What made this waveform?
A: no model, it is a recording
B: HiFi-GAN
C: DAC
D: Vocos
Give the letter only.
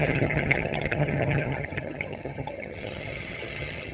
B